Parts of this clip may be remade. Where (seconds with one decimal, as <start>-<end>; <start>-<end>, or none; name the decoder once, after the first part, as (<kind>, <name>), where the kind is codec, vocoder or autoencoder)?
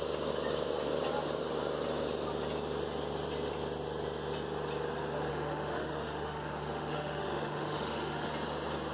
5.3-8.3 (autoencoder, DAC-VAE)